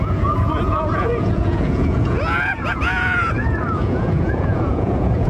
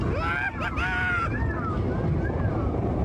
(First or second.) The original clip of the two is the second